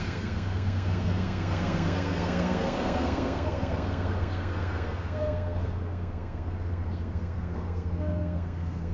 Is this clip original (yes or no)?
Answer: no